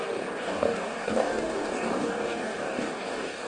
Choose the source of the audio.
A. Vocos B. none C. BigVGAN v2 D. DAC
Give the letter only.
D